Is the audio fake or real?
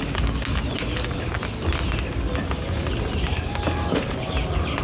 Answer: real